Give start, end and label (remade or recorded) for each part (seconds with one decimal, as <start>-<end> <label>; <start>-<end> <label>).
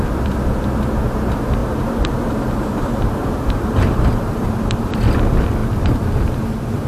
0.0-1.6 recorded; 1.6-4.1 remade; 4.1-6.9 recorded